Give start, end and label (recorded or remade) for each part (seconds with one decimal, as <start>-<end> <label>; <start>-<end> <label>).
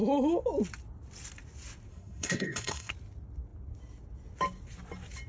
0.0-1.9 recorded; 1.9-2.9 remade; 2.9-5.3 recorded